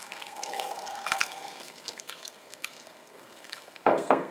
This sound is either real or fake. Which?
fake